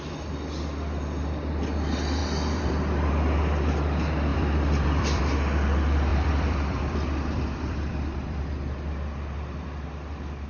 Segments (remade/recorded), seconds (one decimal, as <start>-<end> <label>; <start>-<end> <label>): 0.0-2.2 recorded; 2.2-3.1 remade; 3.1-4.3 recorded; 4.3-5.2 remade; 5.2-6.1 recorded; 6.1-8.4 remade; 8.4-10.5 recorded